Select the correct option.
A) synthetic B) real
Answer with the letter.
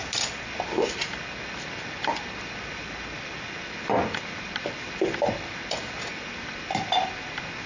B